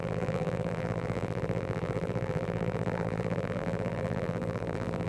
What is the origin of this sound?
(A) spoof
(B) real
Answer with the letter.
A